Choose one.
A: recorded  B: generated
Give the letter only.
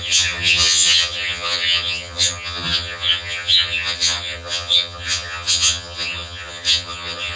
B